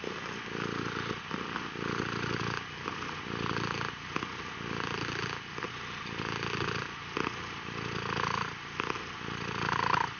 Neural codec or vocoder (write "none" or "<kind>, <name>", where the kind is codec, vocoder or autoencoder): none